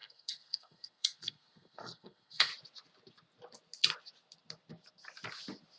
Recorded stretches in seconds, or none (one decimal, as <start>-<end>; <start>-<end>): 2.5-5.8